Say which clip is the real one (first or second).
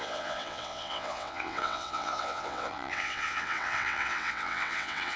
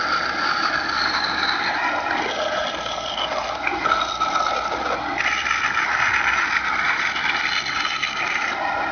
second